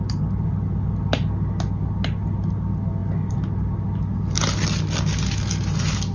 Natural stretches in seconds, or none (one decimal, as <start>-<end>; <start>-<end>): 0.0-6.1